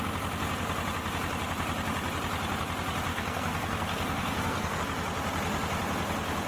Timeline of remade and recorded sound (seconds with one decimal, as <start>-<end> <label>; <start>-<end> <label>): 0.0-3.1 recorded; 3.1-4.8 remade; 4.8-6.5 recorded